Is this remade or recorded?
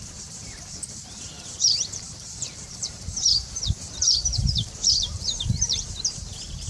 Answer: remade